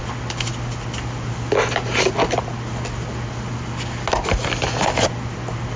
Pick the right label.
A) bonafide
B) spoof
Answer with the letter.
A